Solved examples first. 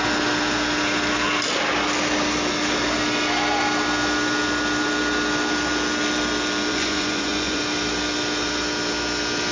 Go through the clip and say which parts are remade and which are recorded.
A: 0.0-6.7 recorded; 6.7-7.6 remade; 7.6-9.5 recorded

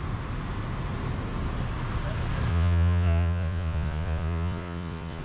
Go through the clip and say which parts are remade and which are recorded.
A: 0.0-2.5 recorded; 2.5-5.2 remade

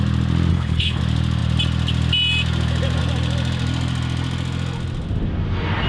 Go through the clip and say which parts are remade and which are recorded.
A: 0.0-0.5 recorded; 0.5-1.0 remade; 1.0-5.9 recorded

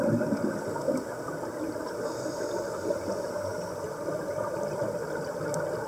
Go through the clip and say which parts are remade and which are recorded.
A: 0.0-5.9 recorded